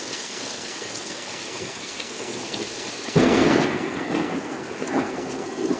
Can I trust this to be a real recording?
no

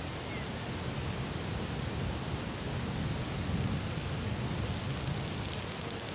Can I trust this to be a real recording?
yes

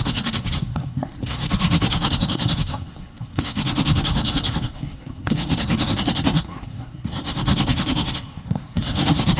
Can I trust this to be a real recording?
no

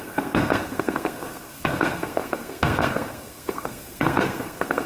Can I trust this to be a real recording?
no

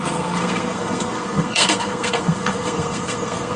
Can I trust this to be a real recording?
no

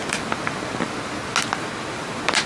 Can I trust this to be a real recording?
yes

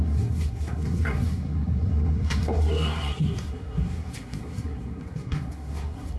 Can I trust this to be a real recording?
no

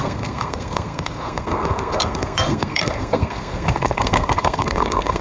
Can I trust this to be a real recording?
no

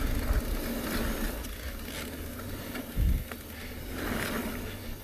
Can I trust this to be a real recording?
yes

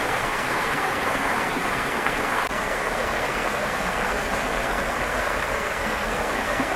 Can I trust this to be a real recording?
no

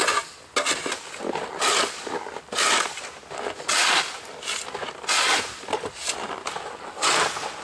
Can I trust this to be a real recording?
yes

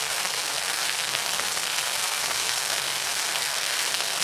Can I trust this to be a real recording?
no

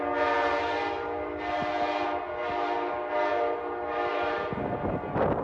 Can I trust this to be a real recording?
yes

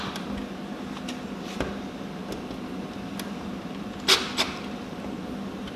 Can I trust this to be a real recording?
yes